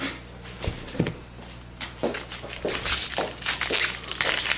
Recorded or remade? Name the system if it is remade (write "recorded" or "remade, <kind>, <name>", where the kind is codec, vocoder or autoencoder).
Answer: recorded